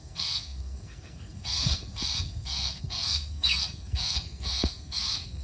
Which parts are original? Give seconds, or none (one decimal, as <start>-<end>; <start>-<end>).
none